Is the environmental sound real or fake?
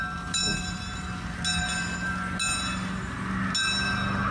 real